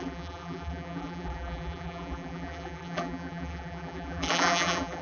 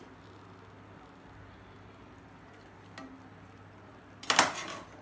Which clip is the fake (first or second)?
first